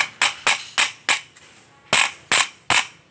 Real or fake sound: real